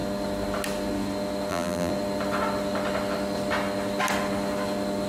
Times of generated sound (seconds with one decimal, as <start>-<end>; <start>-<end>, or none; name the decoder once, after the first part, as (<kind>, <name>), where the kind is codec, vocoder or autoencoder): 1.5-1.9 (vocoder, BigVGAN v2)